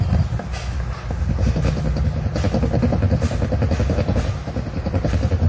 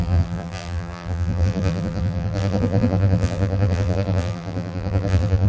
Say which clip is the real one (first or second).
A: first